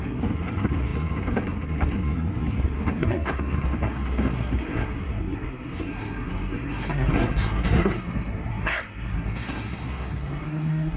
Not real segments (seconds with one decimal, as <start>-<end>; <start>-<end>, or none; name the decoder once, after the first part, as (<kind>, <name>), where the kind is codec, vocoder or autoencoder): 0.0-11.0 (codec, SNAC)